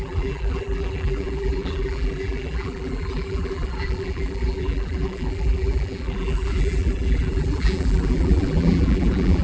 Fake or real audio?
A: fake